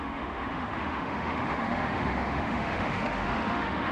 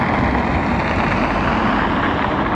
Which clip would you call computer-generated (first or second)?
first